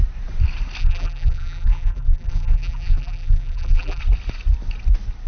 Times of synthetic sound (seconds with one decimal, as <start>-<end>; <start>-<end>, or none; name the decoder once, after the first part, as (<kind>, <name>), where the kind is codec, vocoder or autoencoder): 0.8-4.0 (vocoder, BigVGAN v2)